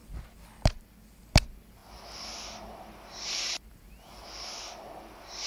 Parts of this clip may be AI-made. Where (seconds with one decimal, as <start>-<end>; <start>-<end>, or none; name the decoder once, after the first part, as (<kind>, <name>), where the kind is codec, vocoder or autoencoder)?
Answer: none